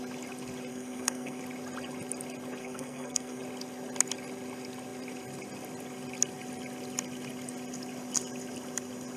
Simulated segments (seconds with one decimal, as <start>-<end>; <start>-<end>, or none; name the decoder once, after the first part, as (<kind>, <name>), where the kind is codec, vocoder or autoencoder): 0.7-1.4 (codec, SNAC); 2.6-3.4

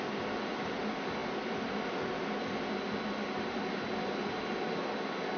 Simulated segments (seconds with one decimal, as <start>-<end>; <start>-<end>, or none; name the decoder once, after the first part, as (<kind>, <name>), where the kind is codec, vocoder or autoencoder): none

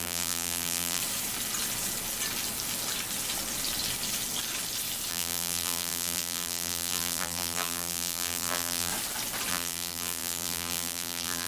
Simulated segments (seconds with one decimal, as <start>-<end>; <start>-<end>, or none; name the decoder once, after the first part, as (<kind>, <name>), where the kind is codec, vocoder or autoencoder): 0.0-1.0 (vocoder, BigVGAN v2); 5.1-8.9; 9.5-11.5